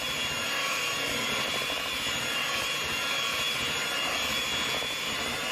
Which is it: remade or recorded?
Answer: recorded